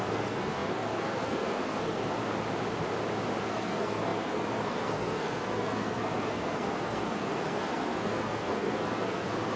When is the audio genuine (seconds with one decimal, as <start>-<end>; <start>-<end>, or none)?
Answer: 2.2-3.4